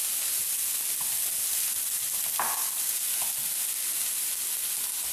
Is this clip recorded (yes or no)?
yes